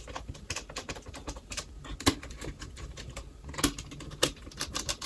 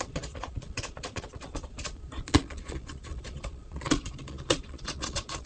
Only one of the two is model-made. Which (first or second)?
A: second